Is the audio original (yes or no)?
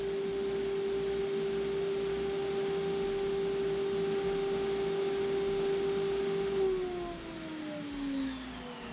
yes